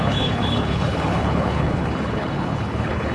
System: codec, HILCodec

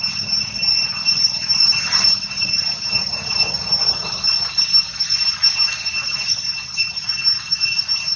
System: none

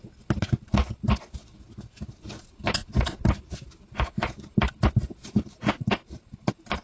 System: none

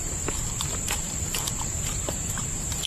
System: vocoder, BigVGAN v2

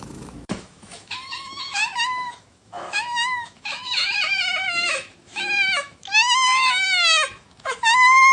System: autoencoder, DAC-VAE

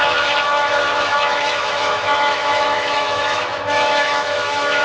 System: autoencoder, DAC-VAE